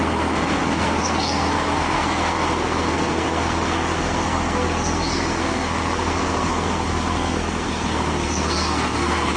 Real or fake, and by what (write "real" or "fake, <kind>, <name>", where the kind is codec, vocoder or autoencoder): fake, codec, SNAC